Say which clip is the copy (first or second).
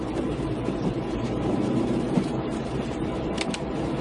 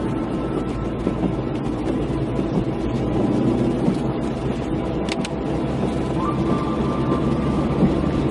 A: first